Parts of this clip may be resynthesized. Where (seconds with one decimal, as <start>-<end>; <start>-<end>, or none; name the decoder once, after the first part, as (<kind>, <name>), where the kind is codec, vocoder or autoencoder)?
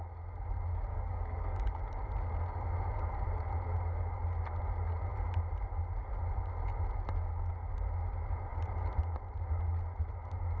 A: 0.9-1.8 (codec, DAC)